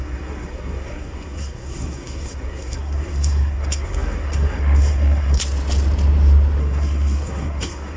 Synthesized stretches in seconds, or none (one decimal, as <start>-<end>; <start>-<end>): 0.0-5.4; 6.6-8.0